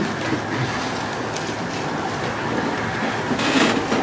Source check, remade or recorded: recorded